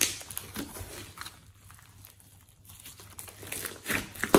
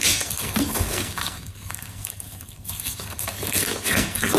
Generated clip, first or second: second